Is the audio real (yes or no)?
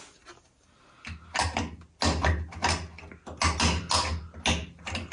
yes